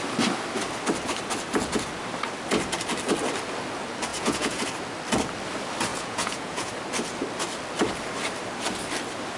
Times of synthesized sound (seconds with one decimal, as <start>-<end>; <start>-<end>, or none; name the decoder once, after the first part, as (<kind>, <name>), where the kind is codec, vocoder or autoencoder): 4.1-4.7 (vocoder, Vocos); 5.9-6.7